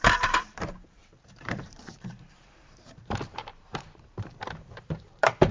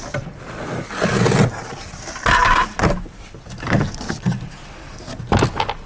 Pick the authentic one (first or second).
second